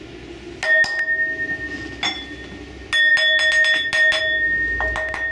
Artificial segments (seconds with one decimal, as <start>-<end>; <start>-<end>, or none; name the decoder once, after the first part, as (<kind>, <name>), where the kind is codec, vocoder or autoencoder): none